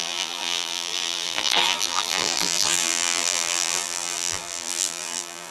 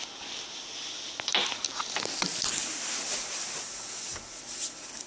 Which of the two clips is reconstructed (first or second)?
first